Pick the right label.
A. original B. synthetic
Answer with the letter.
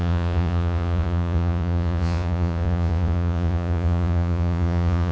B